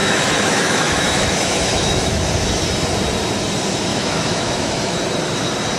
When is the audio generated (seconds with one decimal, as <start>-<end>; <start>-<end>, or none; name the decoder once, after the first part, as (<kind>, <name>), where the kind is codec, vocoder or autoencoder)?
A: 0.0-2.2 (autoencoder, DAC-VAE); 3.9-5.0